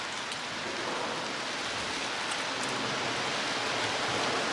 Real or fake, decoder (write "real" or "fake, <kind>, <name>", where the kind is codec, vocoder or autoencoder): real